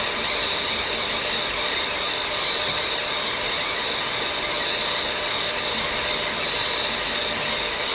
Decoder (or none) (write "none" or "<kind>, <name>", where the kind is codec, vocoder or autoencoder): none